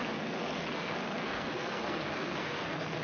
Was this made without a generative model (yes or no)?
no